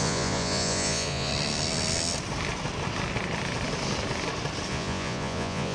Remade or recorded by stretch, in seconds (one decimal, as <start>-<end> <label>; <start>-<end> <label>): 0.0-1.3 remade; 1.3-4.7 recorded; 4.7-5.7 remade